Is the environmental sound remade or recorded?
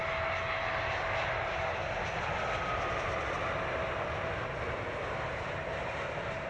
recorded